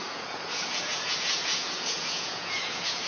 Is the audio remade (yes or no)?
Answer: yes